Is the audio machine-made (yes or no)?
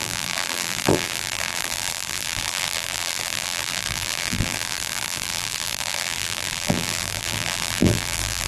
yes